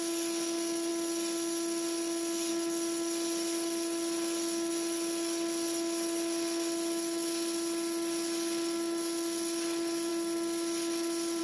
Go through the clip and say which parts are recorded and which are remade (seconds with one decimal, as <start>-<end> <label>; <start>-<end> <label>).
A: 0.0-11.4 recorded